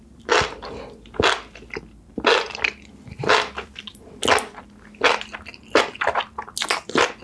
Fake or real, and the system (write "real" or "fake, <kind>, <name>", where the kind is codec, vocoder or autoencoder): real